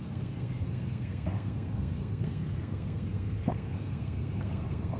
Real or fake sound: fake